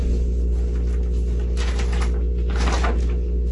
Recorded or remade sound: recorded